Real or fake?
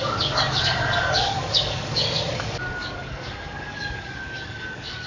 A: fake